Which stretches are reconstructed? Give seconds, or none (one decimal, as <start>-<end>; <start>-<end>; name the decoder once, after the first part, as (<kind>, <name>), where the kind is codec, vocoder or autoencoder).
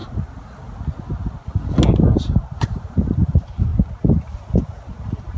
1.9-3.7 (vocoder, BigVGAN v2); 4.2-5.4